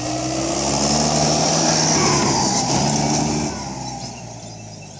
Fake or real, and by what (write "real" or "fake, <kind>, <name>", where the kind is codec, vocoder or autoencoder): real